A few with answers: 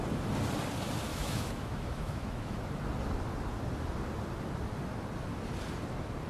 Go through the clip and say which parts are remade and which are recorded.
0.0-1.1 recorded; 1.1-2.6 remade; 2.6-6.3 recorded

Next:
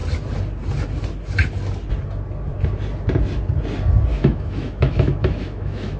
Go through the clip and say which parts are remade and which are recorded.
0.0-4.1 recorded; 4.1-6.0 remade

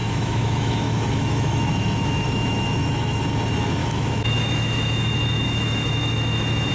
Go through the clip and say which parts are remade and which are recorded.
0.0-3.2 remade; 3.2-3.8 recorded; 3.8-6.7 remade

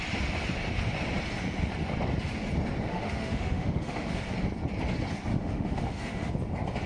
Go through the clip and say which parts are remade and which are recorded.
0.0-2.9 recorded; 2.9-4.2 remade; 4.2-5.3 recorded; 5.3-6.3 remade; 6.3-6.9 recorded

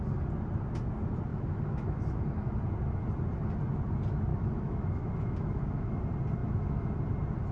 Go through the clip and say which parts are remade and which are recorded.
0.0-1.3 recorded; 1.3-2.5 remade; 2.5-4.3 recorded; 4.3-6.0 remade; 6.0-6.4 recorded; 6.4-6.9 remade; 6.9-7.5 recorded